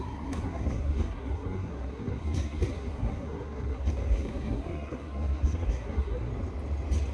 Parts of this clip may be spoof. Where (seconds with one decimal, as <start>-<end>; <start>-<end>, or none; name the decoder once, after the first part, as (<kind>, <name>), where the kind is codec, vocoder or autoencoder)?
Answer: 0.0-6.3 (codec, SNAC)